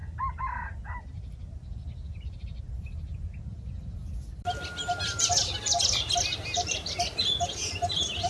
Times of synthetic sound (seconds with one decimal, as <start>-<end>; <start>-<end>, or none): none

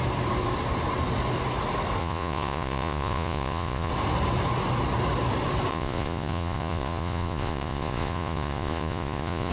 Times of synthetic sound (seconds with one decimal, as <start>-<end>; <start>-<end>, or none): 2.0-3.9; 5.7-9.5

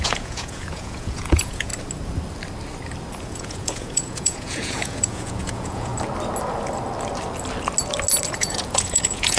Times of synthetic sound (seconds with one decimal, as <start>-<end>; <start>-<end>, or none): 0.0-1.7; 3.2-5.9; 8.3-9.4